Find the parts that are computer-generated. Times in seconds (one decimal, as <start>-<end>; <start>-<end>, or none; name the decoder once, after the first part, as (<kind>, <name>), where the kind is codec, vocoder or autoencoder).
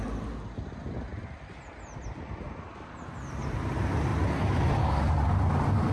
1.1-2.4 (vocoder, BigVGAN v2)